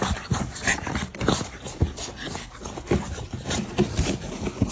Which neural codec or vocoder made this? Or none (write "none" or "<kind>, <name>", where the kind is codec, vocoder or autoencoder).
none